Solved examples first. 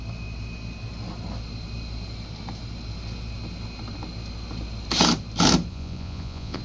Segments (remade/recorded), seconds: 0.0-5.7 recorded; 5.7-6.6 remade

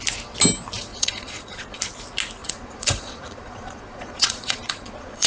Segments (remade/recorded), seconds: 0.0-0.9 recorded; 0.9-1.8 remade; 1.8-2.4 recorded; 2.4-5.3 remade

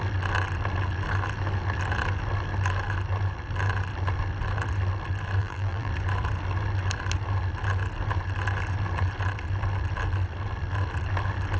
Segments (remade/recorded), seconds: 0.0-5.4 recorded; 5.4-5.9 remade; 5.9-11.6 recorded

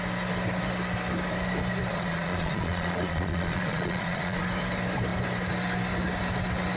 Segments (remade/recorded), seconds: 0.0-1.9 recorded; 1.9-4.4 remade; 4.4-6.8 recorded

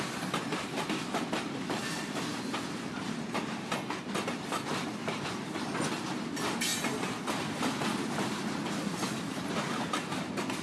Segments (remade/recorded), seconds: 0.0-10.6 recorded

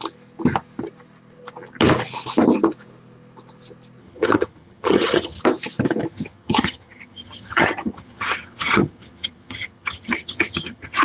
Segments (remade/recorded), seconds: 0.0-4.0 recorded; 4.0-5.4 remade; 5.4-6.1 recorded; 6.1-11.0 remade

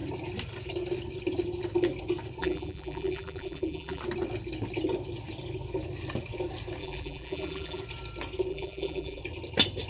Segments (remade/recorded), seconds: 0.0-2.4 recorded; 2.4-4.0 remade; 4.0-6.8 recorded; 6.8-7.8 remade; 7.8-8.5 recorded; 8.5-9.2 remade; 9.2-9.9 recorded

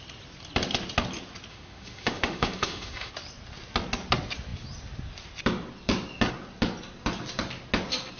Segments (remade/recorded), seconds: 0.0-1.5 recorded; 1.5-3.1 remade; 3.1-8.2 recorded